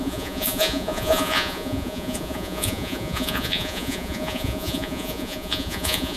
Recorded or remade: remade